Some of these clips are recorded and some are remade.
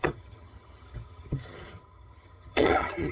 remade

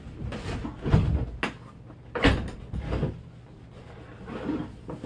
recorded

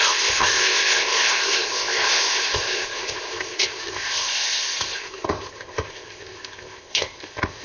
remade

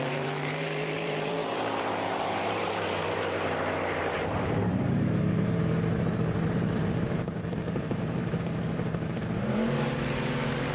remade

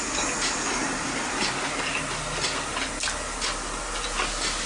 recorded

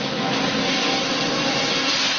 recorded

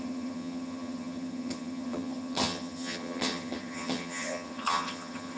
remade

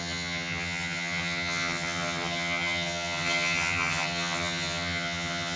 remade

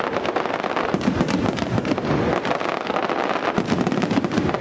recorded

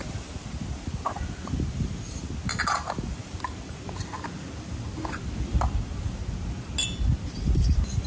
recorded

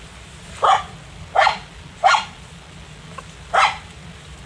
recorded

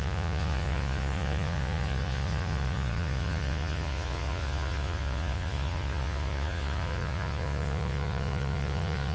remade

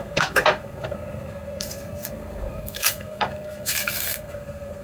remade